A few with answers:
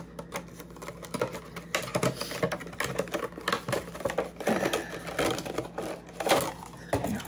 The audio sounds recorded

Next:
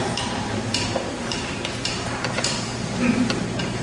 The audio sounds remade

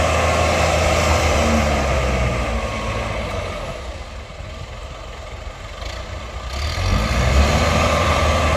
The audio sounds recorded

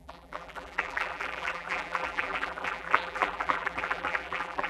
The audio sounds remade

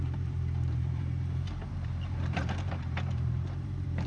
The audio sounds remade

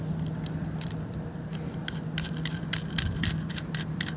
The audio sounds recorded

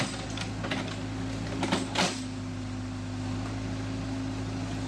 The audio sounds recorded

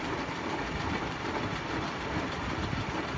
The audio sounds remade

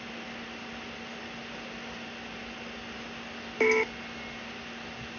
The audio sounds recorded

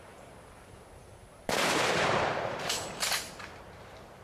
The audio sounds remade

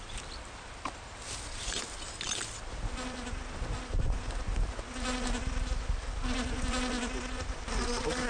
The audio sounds recorded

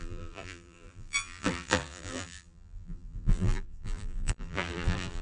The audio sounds remade